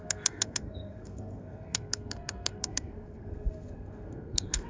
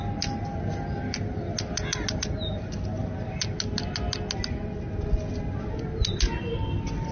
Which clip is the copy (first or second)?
first